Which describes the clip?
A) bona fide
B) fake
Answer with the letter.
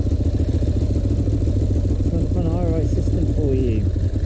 A